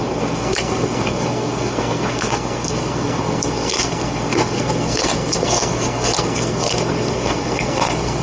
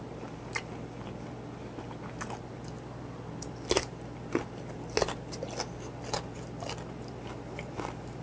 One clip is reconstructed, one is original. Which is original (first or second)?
second